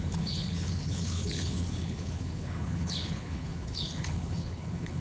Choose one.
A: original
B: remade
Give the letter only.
B